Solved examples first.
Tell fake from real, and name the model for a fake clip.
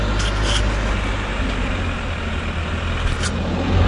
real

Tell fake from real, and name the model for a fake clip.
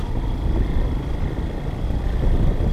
real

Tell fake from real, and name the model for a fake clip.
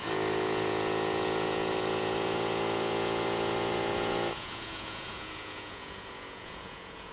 fake, vocoder, Vocos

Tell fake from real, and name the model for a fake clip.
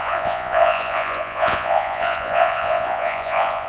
fake, vocoder, Vocos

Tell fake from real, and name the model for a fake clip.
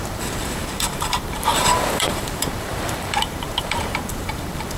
fake, vocoder, BigVGAN v2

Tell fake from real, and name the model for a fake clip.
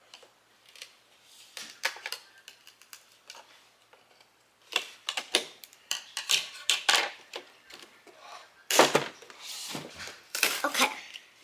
fake, vocoder, BigVGAN v2